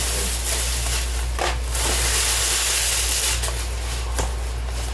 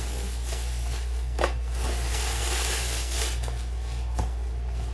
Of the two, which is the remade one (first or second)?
second